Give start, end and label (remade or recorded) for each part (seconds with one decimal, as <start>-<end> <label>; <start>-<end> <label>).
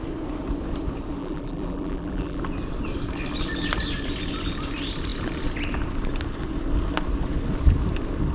0.0-1.2 recorded; 1.2-2.4 remade; 2.4-8.3 recorded